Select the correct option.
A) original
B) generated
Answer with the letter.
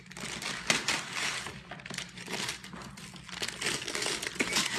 A